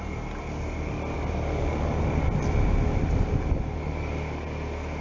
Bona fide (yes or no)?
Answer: yes